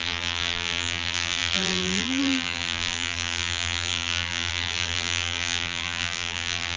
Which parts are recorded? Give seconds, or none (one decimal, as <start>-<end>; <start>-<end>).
none